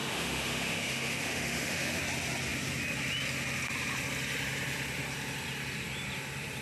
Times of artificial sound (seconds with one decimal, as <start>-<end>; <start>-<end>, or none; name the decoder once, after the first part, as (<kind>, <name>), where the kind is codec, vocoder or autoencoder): 0.0-2.0 (autoencoder, DAC-VAE)